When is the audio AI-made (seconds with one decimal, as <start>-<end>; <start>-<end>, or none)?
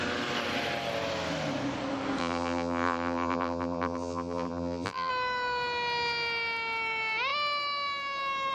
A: 2.2-5.1